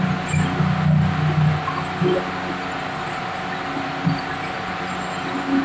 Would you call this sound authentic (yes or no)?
yes